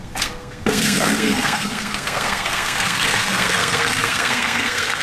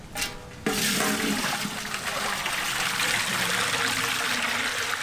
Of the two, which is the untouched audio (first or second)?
second